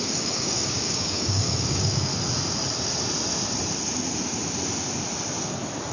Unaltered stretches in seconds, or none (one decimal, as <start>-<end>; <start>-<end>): 2.1-5.9